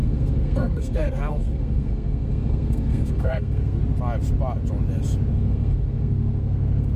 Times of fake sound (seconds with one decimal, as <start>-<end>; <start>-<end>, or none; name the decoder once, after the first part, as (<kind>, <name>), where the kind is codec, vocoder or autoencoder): 0.0-3.8 (codec, SNAC); 5.3-7.0